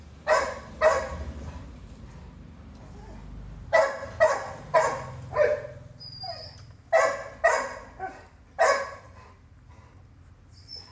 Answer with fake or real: real